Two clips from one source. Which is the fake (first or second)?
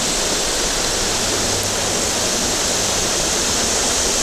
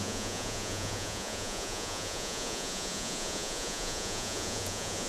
second